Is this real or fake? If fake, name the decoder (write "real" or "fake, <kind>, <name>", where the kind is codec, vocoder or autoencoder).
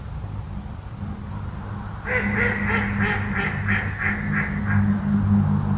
real